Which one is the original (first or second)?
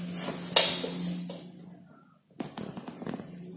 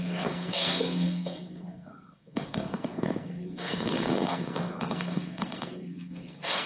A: first